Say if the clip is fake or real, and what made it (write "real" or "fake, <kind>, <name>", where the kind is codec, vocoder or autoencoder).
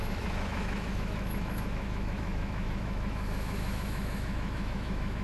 fake, autoencoder, DAC-VAE